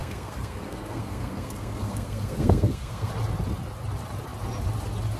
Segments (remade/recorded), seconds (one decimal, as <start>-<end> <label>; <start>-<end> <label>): 0.0-3.1 remade; 3.1-5.2 recorded